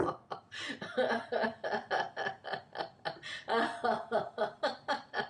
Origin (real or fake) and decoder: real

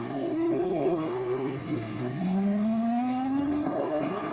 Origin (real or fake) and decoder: fake, codec, SNAC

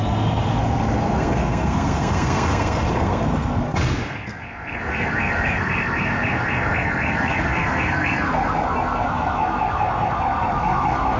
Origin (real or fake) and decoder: fake, codec, SNAC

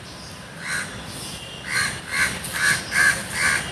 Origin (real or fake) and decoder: real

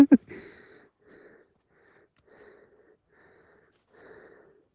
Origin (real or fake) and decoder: real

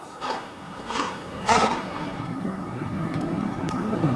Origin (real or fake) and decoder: fake, codec, SNAC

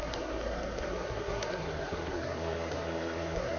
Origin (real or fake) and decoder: fake, codec, SNAC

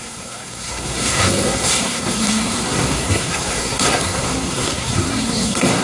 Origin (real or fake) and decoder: fake, codec, SNAC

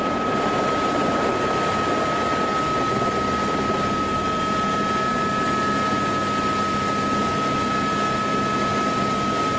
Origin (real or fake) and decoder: real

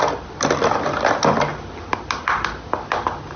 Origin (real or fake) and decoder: real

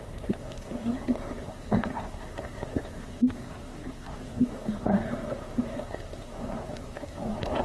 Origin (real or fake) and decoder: fake, codec, SNAC